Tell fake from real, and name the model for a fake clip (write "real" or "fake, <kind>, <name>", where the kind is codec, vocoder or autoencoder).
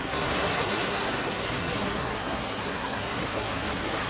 fake, codec, SNAC